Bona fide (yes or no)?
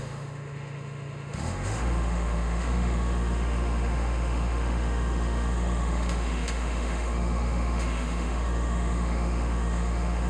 no